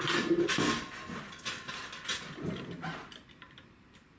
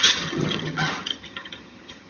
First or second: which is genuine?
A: first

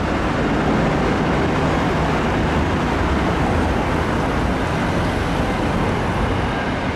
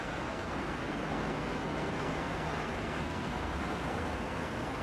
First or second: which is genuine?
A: first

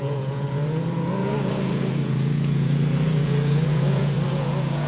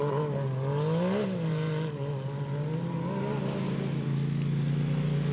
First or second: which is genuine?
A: second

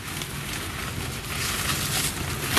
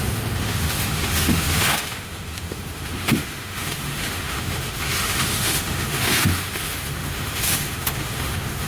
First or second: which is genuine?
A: first